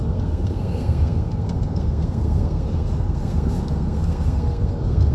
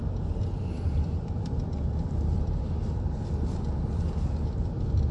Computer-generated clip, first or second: first